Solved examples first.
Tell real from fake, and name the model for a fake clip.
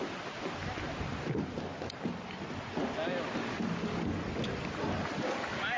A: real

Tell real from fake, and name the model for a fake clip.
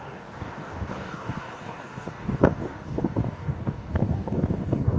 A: fake, codec, DAC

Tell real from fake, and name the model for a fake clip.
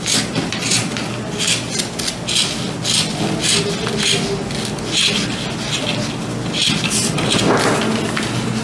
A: real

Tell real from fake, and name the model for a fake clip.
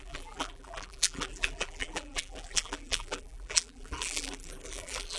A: fake, vocoder, BigVGAN v2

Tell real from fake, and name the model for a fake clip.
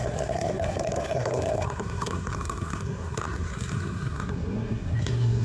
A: fake, codec, SNAC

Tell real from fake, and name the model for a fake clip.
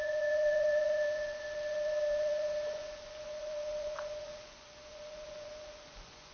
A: fake, vocoder, Vocos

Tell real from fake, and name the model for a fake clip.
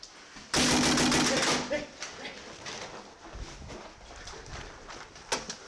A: real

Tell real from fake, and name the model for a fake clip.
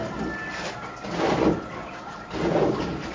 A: real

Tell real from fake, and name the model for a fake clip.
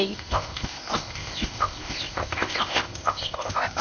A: fake, codec, ZipCodec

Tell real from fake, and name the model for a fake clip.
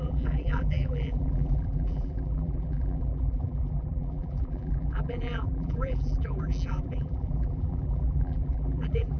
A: fake, vocoder, BigVGAN v2